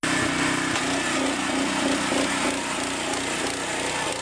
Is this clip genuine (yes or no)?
yes